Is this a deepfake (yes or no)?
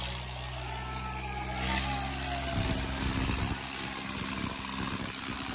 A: no